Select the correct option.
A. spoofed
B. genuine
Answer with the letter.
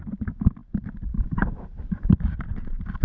B